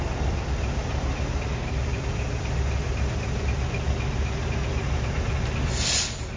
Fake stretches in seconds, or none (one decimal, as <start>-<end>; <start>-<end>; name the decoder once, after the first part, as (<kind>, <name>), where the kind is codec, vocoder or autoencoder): none